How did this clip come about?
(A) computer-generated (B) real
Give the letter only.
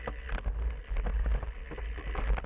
B